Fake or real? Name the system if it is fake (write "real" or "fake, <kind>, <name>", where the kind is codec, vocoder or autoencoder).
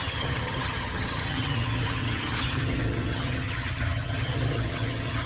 fake, vocoder, HiFi-GAN